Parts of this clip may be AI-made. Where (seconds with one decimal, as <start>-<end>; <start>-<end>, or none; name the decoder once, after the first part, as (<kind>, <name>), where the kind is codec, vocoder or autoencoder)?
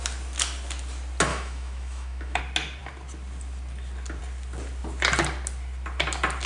1.3-2.4 (autoencoder, DAC-VAE)